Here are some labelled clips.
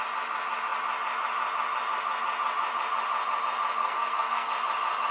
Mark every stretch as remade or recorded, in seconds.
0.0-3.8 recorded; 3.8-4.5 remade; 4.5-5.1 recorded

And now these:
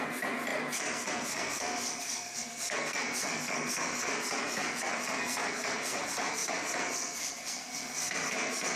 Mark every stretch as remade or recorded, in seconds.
0.0-8.8 remade

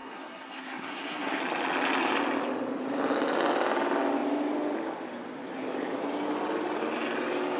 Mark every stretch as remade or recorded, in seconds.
0.0-1.4 remade; 1.4-7.6 recorded

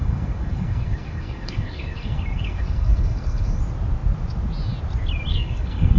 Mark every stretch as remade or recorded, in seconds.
0.0-3.6 remade; 3.6-5.3 recorded; 5.3-6.0 remade

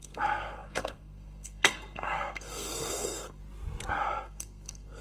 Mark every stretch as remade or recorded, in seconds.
0.0-3.4 remade; 3.4-3.9 recorded; 3.9-5.0 remade

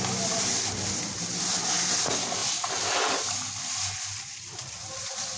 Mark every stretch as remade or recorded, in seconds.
0.0-5.4 recorded